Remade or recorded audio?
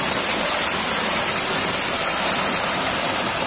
recorded